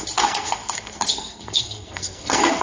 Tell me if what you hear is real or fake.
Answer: fake